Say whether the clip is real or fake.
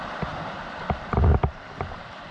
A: fake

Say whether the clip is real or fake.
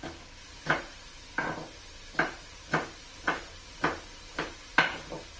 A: fake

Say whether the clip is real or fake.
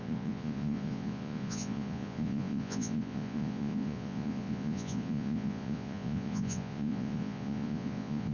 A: fake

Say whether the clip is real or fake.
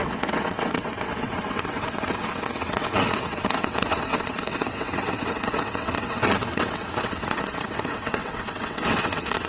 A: fake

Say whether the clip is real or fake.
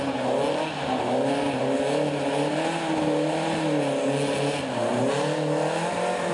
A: real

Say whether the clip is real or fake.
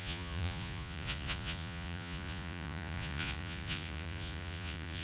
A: fake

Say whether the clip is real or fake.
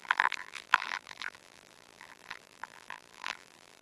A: fake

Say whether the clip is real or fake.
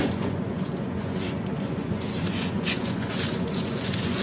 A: fake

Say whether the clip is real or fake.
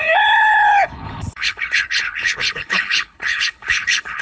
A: fake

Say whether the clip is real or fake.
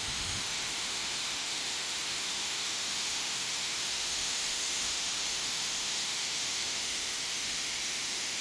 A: fake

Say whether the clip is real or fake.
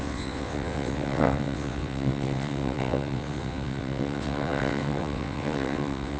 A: fake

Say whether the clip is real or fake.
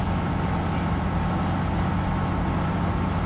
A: real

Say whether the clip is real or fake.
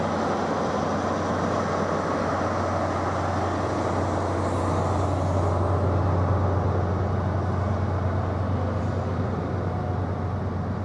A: real